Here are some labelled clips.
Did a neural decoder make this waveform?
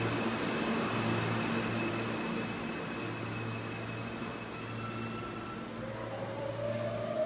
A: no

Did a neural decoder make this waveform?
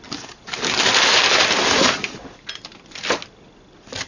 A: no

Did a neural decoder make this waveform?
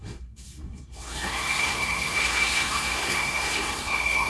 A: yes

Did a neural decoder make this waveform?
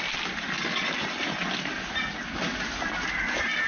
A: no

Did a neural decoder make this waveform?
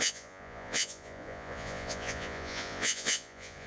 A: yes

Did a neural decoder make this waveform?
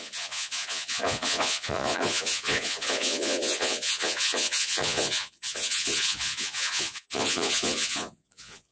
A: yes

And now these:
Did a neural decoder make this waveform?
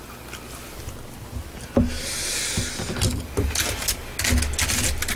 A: no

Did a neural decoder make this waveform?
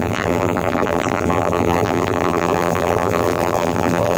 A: yes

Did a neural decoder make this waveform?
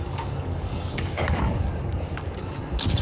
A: yes